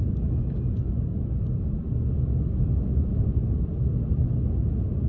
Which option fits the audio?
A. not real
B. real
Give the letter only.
B